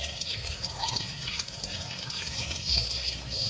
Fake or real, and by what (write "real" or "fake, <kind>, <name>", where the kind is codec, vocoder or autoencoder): fake, codec, SNAC